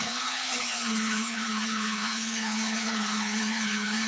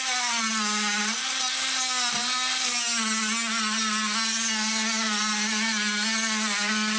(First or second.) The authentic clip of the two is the second